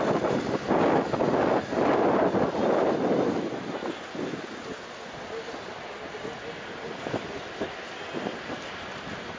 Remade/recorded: recorded